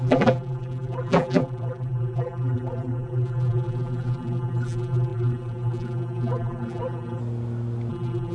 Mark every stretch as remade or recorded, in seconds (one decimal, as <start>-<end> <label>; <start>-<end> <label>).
0.0-7.2 remade; 7.2-7.9 recorded; 7.9-8.3 remade